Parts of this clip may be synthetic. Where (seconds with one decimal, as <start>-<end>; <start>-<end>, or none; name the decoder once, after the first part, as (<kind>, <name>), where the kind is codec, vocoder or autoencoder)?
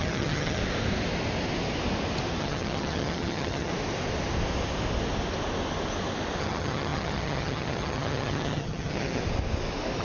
0.0-0.6 (vocoder, HiFi-GAN); 2.4-3.7; 6.4-9.2